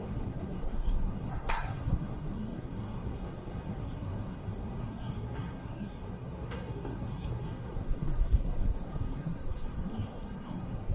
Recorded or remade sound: remade